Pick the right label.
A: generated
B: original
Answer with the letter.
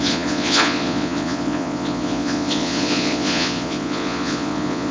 A